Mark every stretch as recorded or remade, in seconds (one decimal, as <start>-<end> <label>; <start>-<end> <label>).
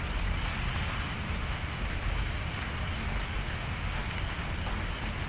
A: 0.0-1.4 recorded; 1.4-1.9 remade; 1.9-3.4 recorded; 3.4-4.0 remade; 4.0-5.3 recorded